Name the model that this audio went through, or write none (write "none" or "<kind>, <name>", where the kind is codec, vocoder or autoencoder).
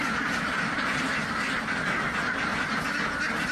none